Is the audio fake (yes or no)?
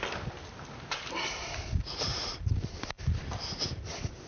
no